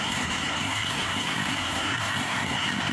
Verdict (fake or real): fake